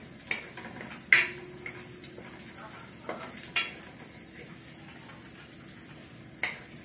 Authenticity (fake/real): real